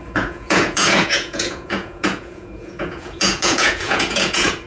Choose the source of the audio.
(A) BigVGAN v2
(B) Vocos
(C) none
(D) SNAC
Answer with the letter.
B